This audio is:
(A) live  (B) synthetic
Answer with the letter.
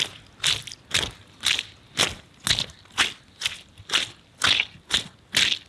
A